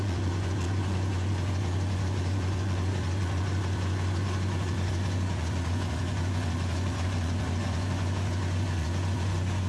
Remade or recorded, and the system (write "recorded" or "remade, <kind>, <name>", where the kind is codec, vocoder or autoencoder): remade, vocoder, Vocos